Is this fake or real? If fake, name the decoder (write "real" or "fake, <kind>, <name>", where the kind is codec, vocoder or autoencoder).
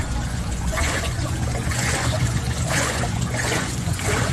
fake, vocoder, Vocos